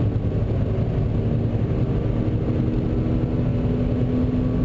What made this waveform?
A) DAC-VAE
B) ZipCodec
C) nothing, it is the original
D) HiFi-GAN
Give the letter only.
C